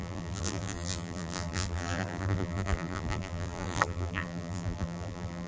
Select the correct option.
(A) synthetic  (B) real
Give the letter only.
A